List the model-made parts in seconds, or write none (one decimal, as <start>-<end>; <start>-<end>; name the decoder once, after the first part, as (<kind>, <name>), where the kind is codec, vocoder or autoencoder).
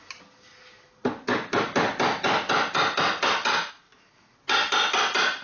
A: none